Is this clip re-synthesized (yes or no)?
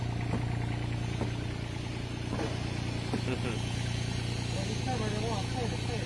no